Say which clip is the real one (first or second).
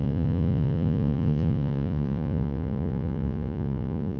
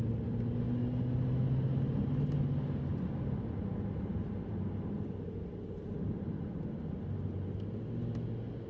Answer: second